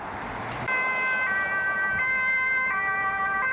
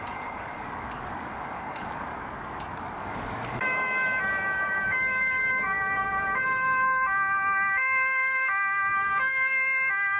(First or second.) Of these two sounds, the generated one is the second